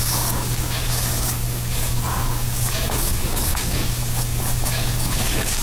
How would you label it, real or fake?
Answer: fake